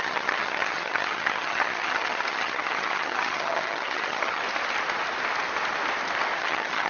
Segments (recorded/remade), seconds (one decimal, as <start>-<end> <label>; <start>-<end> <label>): 0.0-4.4 remade; 4.4-6.4 recorded; 6.4-6.9 remade